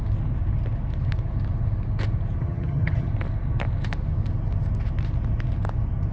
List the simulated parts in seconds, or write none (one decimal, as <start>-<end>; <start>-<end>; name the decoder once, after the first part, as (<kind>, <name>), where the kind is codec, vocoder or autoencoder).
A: 2.4-3.1 (vocoder, HiFi-GAN)